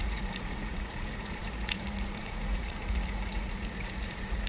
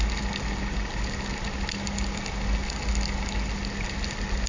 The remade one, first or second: first